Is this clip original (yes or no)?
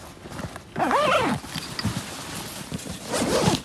yes